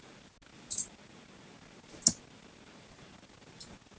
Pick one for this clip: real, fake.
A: real